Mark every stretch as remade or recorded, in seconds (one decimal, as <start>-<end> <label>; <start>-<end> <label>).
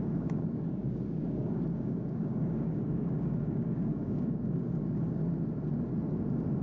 0.0-5.2 remade; 5.2-6.6 recorded